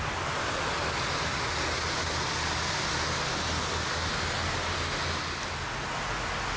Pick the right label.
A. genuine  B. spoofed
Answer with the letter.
A